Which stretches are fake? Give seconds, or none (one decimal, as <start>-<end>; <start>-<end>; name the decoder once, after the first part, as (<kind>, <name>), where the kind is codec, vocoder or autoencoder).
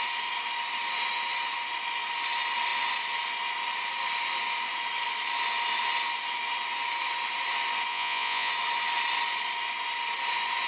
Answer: 7.9-8.5 (vocoder, Vocos)